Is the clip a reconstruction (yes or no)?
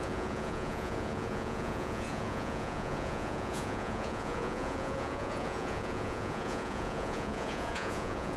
yes